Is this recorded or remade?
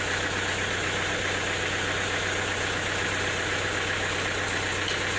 recorded